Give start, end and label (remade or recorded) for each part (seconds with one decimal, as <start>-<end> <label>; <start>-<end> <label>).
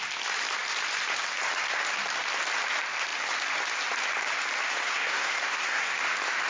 0.0-4.7 recorded; 4.7-6.0 remade; 6.0-6.5 recorded